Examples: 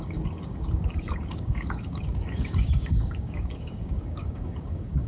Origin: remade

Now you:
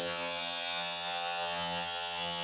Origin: remade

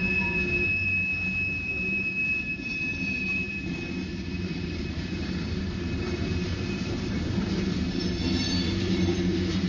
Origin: remade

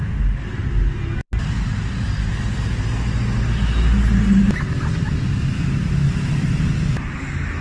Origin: recorded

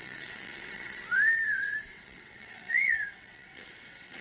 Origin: remade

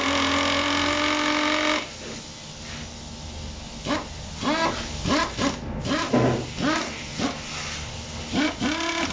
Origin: recorded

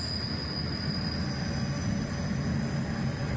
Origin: recorded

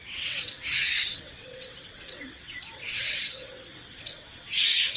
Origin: remade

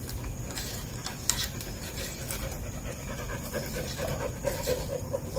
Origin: recorded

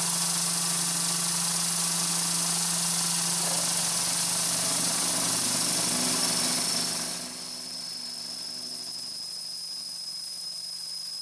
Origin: recorded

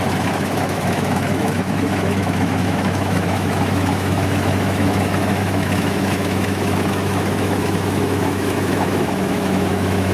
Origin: remade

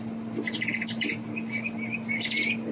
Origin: recorded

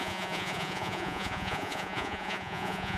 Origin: remade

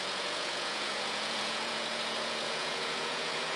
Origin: remade